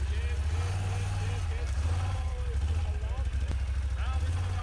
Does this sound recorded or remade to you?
recorded